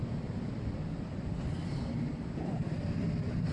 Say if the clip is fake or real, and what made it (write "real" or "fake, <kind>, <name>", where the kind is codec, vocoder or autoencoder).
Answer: real